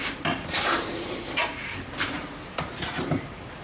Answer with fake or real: fake